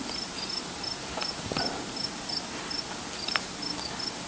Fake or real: real